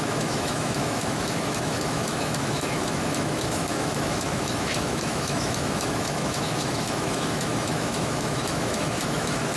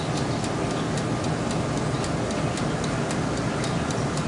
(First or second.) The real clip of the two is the second